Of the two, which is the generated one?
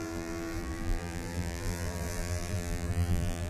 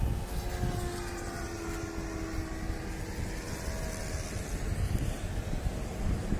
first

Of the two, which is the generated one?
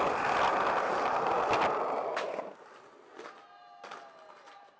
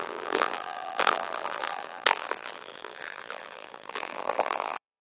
second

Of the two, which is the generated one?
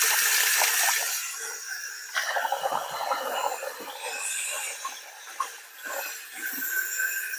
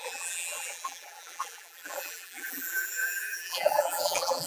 second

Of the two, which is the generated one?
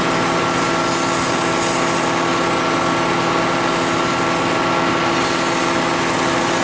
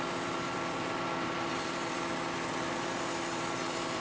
second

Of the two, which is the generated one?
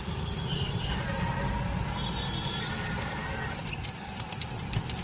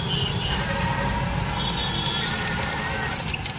first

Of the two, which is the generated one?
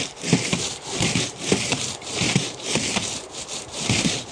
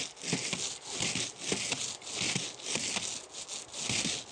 first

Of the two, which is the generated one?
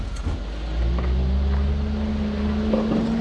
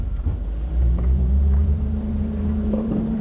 second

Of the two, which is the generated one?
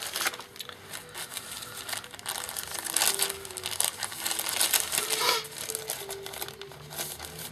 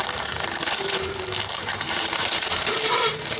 second